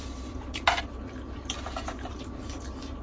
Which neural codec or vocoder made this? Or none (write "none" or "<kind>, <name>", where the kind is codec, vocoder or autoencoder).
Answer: none